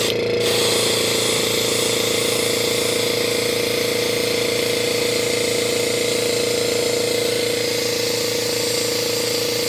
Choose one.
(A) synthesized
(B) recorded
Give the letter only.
B